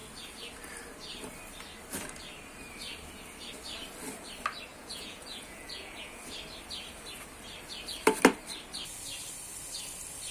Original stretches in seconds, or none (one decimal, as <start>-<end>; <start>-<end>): 0.0-4.7; 6.2-10.3